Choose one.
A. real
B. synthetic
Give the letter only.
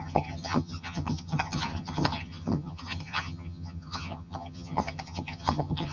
B